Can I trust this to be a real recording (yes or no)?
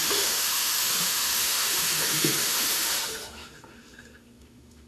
no